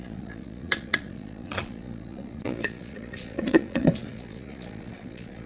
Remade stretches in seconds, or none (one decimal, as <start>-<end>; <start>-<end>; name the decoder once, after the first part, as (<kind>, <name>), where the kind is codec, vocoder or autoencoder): 0.0-5.5 (vocoder, Vocos)